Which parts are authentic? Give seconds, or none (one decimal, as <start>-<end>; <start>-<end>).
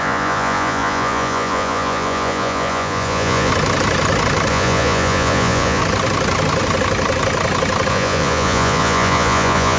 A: 3.5-4.5; 5.8-7.9